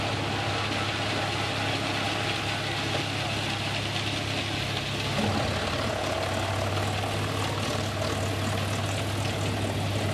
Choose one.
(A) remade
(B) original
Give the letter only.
B